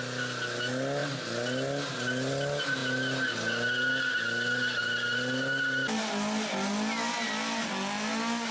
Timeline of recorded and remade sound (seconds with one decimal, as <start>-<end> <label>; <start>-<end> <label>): 0.0-8.5 recorded